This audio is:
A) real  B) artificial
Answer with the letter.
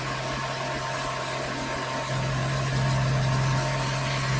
A